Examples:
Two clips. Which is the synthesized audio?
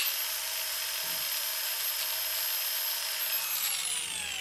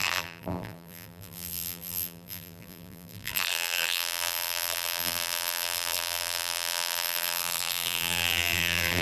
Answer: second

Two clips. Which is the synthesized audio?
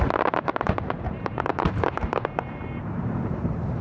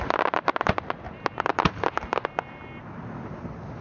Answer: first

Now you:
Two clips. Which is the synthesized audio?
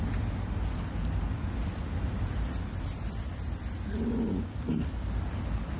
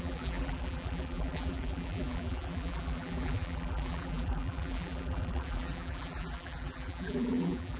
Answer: second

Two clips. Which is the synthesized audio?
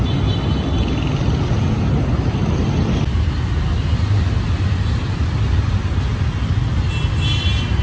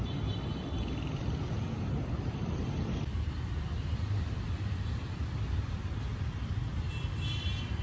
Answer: second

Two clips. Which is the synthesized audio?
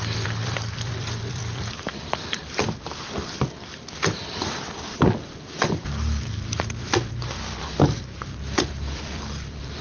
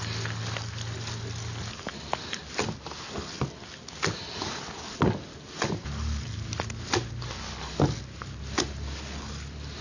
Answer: first